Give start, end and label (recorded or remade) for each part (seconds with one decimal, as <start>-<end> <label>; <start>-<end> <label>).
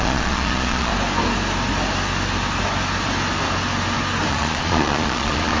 0.0-0.9 remade; 0.9-4.3 recorded; 4.3-5.6 remade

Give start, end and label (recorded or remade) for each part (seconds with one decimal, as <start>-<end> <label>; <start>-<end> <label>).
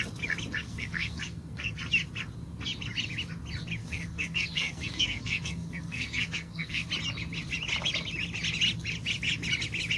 0.0-0.6 recorded; 0.6-1.8 remade; 1.8-3.8 recorded; 3.8-6.9 remade; 6.9-10.0 recorded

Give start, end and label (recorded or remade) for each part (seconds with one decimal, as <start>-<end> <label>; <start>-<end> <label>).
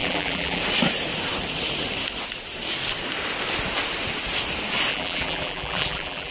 0.0-0.6 remade; 0.6-4.9 recorded; 4.9-6.3 remade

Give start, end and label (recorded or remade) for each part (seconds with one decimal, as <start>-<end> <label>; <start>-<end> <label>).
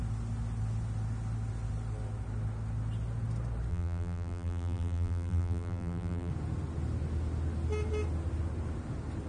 0.0-3.7 recorded; 3.7-6.3 remade; 6.3-9.3 recorded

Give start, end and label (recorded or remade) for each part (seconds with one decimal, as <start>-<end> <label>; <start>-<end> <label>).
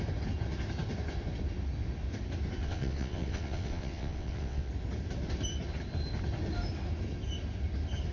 0.0-2.6 recorded; 2.6-4.7 remade; 4.7-8.1 recorded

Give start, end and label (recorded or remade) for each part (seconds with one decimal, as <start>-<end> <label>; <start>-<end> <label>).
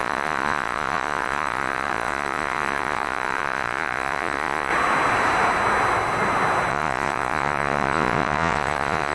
0.0-4.7 remade; 4.7-6.7 recorded; 6.7-9.1 remade